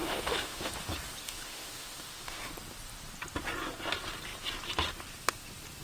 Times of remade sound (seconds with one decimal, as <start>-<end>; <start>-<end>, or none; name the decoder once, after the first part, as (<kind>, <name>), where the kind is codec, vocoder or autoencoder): 0.0-0.7 (autoencoder, DAC-VAE); 1.2-2.5